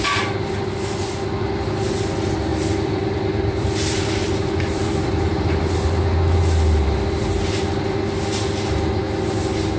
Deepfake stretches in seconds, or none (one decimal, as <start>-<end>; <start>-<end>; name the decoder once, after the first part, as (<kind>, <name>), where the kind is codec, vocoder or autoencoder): 2.5-5.6 (vocoder, BigVGAN v2)